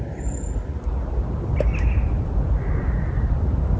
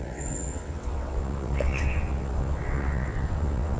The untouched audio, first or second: first